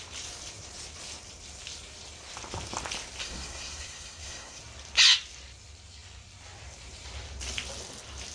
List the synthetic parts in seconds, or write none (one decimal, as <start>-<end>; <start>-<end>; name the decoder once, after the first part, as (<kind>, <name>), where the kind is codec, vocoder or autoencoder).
3.2-4.6 (codec, SNAC)